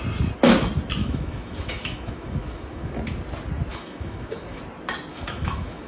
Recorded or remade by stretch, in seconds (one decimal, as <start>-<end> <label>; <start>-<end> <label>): 0.0-1.0 recorded; 1.0-2.9 remade; 2.9-3.7 recorded; 3.7-4.6 remade; 4.6-5.1 recorded; 5.1-5.9 remade